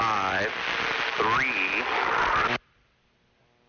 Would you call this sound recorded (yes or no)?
yes